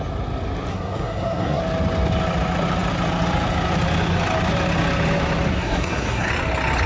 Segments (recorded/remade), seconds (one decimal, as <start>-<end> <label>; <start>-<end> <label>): 0.0-0.7 recorded; 0.7-1.6 remade; 1.6-5.5 recorded; 5.5-6.3 remade; 6.3-6.9 recorded